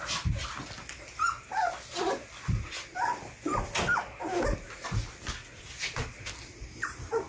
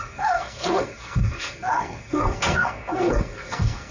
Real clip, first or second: first